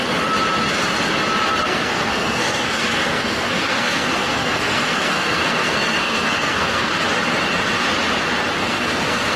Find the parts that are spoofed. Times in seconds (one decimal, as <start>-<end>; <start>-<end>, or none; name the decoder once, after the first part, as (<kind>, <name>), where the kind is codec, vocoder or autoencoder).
1.6-6.9 (codec, SNAC); 8.6-9.4